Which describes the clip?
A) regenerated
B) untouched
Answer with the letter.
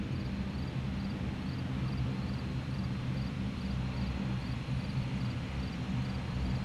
B